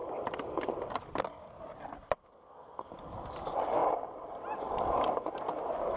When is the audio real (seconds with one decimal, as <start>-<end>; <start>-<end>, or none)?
0.0-2.2; 2.9-6.0